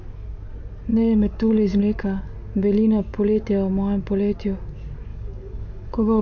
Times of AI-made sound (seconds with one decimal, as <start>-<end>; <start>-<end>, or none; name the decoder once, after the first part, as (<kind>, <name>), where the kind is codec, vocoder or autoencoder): 0.9-1.8 (codec, DAC); 5.1-6.2